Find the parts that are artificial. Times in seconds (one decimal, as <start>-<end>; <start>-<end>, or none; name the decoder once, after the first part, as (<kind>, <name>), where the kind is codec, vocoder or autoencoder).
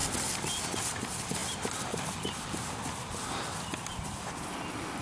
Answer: none